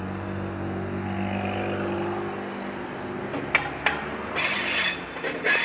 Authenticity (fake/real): real